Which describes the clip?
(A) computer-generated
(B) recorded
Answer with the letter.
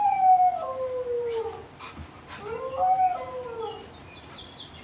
B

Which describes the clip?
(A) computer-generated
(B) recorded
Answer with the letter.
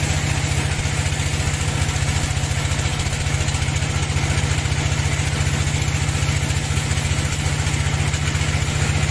B